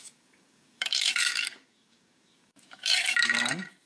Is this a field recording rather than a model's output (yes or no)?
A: no